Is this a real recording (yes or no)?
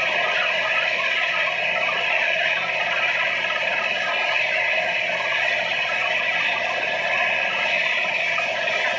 yes